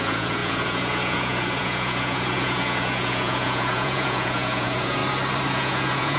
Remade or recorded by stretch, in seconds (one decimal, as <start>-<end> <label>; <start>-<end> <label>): 0.0-5.0 remade; 5.0-5.5 recorded; 5.5-6.2 remade